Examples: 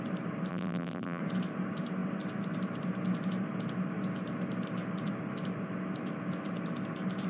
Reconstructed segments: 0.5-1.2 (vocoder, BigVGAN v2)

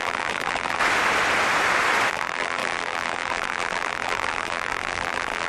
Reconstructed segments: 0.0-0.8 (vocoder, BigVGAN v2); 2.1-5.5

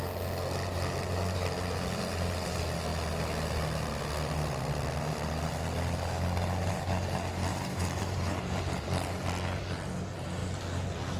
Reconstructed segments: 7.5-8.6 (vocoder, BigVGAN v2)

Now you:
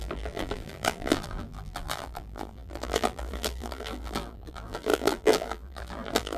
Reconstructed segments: 0.0-6.4 (vocoder, BigVGAN v2)

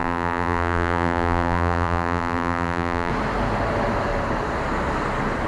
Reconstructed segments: 0.0-3.1 (vocoder, BigVGAN v2)

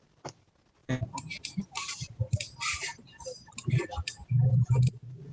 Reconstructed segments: 0.8-4.0 (vocoder, BigVGAN v2)